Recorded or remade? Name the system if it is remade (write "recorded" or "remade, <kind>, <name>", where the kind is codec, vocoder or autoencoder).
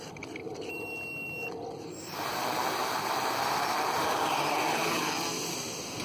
recorded